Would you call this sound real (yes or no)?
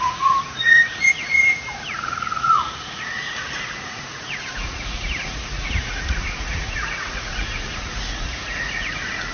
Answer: no